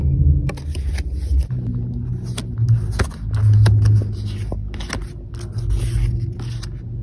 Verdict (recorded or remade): recorded